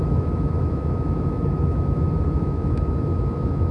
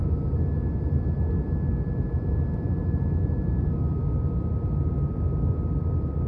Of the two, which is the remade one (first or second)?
first